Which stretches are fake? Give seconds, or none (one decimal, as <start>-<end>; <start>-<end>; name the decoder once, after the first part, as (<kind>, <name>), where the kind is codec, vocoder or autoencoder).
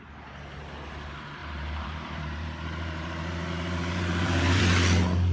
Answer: 1.4-4.6 (vocoder, BigVGAN v2)